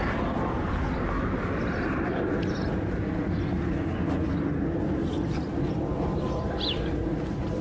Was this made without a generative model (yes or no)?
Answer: yes